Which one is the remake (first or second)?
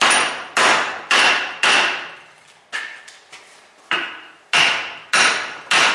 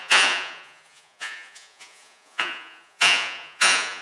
second